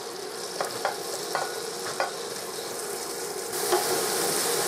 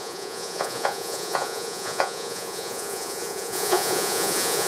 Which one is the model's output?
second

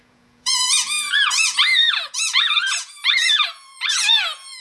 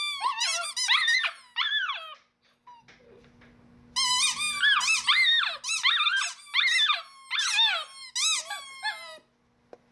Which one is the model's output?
first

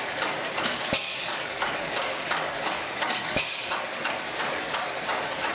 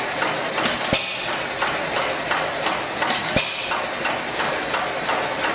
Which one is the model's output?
first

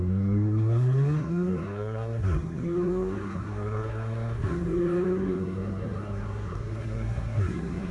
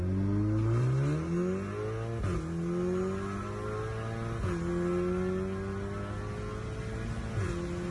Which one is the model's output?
first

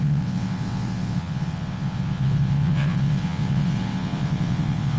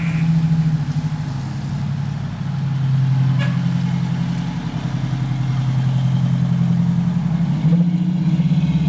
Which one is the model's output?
first